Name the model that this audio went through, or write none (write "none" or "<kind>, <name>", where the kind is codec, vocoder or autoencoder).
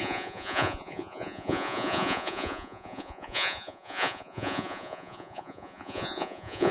vocoder, Vocos